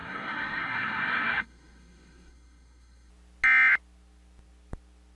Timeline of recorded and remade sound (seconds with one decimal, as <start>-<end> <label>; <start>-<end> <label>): 0.0-3.1 remade; 3.1-5.2 recorded